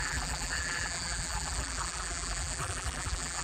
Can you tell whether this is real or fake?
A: fake